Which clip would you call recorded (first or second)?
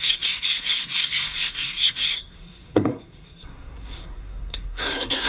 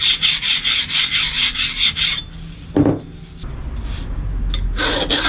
second